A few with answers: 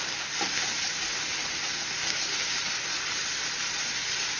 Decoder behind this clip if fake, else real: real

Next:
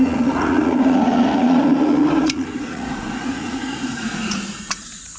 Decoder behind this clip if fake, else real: fake, vocoder, Vocos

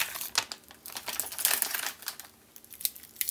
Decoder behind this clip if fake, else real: real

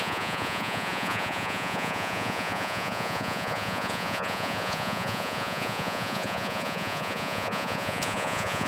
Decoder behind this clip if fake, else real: fake, vocoder, Vocos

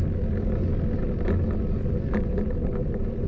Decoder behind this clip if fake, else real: real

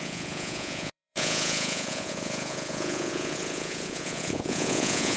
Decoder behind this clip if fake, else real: fake, vocoder, Vocos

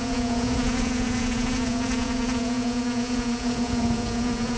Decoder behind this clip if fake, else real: fake, vocoder, Vocos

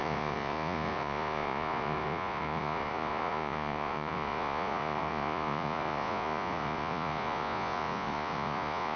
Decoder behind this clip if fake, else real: fake, vocoder, Vocos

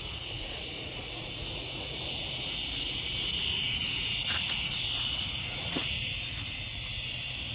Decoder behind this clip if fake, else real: fake, vocoder, Vocos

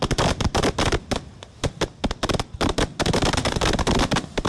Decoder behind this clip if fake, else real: real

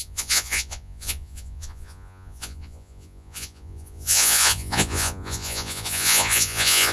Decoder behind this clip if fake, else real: fake, vocoder, Vocos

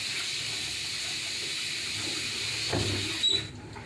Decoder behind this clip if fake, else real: real